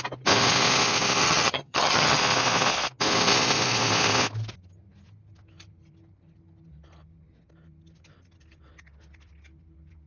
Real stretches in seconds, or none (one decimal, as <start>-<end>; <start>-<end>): 0.0-1.2; 2.2-10.1